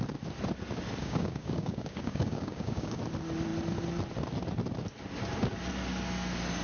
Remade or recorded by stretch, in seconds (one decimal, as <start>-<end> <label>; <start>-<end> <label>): 0.0-1.0 recorded; 1.0-3.0 remade; 3.0-6.6 recorded